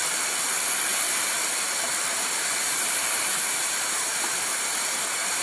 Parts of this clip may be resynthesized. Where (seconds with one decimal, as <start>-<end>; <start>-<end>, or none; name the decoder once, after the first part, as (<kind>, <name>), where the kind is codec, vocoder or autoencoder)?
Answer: 0.9-1.4 (vocoder, BigVGAN v2); 2.1-5.4